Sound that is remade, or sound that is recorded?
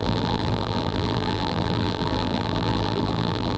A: remade